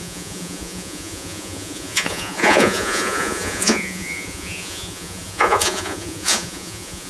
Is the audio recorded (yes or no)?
no